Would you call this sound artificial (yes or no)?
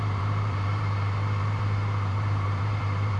yes